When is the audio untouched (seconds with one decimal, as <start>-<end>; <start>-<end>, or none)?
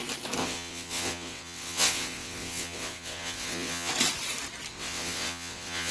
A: 0.0-0.4; 3.9-4.7